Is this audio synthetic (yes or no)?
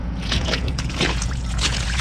yes